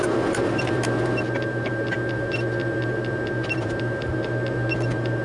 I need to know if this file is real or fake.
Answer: real